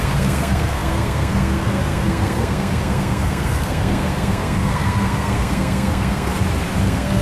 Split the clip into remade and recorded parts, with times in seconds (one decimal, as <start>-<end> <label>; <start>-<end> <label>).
0.0-6.3 remade; 6.3-6.8 recorded; 6.8-7.2 remade